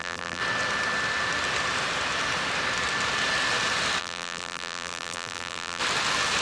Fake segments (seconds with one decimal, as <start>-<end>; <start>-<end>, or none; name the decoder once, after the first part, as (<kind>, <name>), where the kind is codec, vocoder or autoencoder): 0.0-0.4 (vocoder, BigVGAN v2); 4.0-5.8